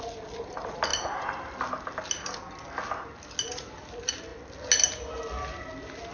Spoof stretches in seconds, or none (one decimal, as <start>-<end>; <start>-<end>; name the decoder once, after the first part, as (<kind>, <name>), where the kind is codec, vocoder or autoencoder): none